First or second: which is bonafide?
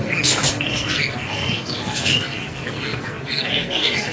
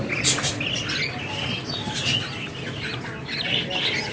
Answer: second